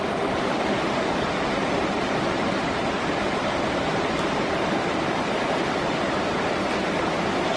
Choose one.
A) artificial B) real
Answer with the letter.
B